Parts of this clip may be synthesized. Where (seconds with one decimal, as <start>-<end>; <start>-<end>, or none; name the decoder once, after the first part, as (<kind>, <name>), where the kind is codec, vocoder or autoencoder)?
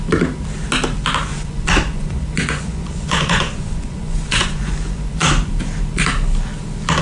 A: 1.3-5.5 (vocoder, Vocos)